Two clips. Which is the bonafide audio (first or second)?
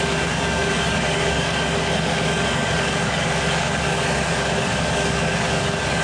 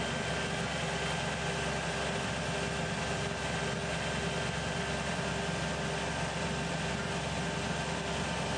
second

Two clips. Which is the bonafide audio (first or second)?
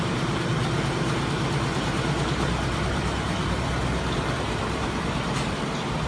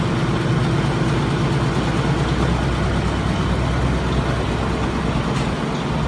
second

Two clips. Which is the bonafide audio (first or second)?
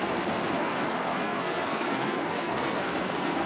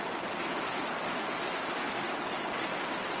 second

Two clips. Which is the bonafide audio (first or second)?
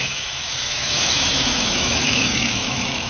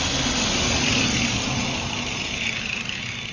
second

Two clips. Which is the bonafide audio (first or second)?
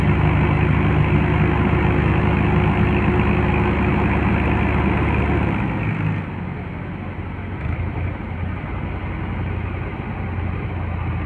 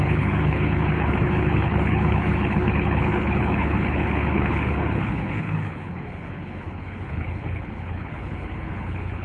first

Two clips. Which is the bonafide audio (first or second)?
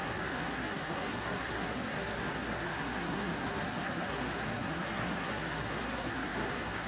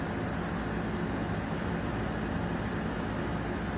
second